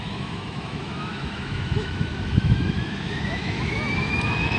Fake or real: fake